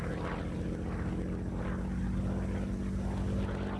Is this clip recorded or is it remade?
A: recorded